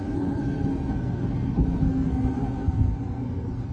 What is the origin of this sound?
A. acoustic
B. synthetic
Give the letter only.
B